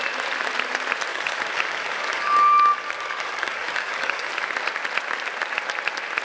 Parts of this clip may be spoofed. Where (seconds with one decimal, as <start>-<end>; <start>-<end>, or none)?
1.1-4.3